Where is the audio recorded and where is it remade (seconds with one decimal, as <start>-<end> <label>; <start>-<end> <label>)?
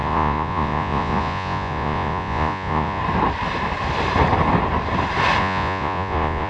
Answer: 0.0-3.0 remade; 3.0-5.4 recorded; 5.4-6.5 remade